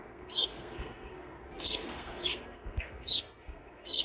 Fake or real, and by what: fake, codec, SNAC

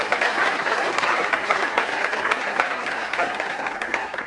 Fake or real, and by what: fake, codec, SNAC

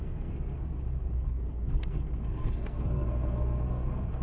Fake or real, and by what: fake, codec, SNAC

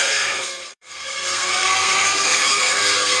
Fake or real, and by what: fake, codec, SNAC